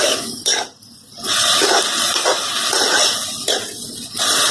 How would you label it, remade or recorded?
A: recorded